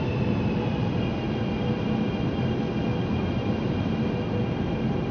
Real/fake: real